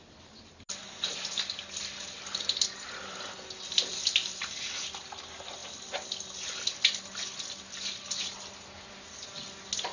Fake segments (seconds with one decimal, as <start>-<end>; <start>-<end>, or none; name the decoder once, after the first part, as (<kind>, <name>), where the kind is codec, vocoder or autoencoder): none